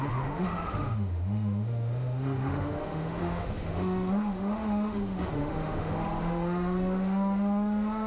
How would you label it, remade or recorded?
remade